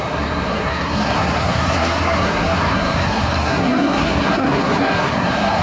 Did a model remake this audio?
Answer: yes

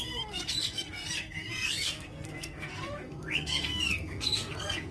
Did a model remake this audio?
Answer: yes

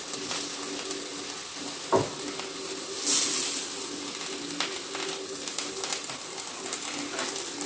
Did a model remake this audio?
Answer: no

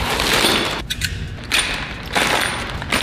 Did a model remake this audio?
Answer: no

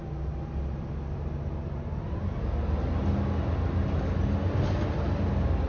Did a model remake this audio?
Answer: no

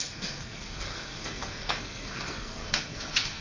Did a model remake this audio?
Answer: yes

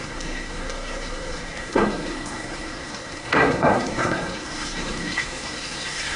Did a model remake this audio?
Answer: yes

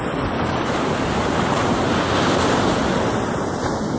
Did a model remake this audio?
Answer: no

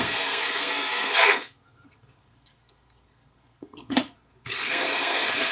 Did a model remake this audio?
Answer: yes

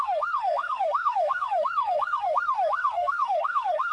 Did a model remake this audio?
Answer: yes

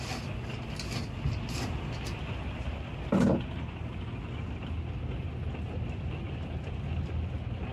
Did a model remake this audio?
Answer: no